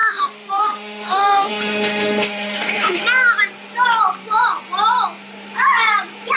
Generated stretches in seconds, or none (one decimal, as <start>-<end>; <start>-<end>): 0.0-3.0